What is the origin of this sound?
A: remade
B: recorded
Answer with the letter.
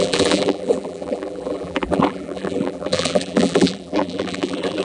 A